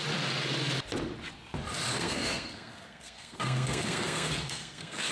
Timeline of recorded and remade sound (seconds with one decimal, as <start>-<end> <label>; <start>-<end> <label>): 0.0-1.9 recorded; 1.9-5.1 remade